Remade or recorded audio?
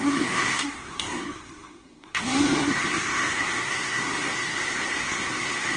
remade